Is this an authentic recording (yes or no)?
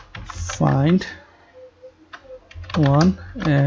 yes